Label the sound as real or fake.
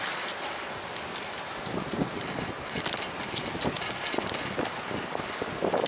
real